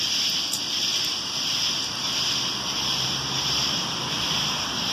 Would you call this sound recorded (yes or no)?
yes